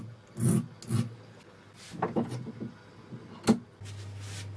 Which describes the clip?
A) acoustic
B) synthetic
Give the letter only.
A